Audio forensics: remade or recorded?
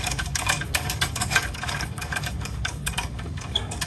remade